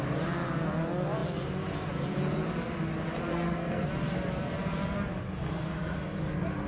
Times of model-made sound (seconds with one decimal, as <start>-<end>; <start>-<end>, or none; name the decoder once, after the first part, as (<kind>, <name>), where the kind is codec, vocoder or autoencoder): 3.3-3.9 (codec, SNAC)